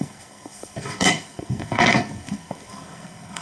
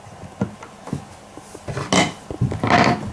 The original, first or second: second